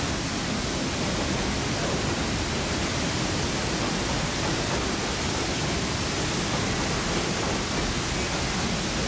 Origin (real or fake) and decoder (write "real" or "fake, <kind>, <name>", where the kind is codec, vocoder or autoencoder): real